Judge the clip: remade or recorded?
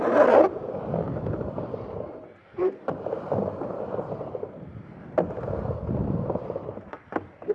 recorded